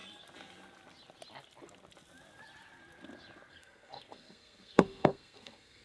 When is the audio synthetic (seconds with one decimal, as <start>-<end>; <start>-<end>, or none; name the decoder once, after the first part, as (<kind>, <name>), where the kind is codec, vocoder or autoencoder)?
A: 3.5-5.8 (codec, SNAC)